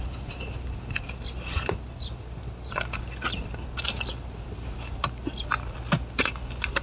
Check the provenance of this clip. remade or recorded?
recorded